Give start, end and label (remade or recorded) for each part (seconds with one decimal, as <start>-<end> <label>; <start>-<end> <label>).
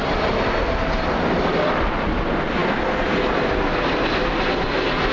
0.0-5.1 recorded